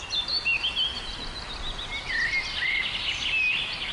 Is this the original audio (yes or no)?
yes